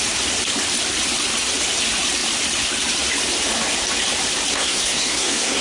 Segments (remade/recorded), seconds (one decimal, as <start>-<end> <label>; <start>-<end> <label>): 0.0-4.5 recorded; 4.5-5.6 remade